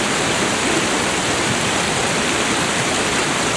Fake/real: real